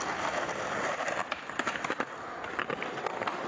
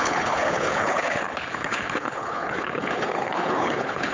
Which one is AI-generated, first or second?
second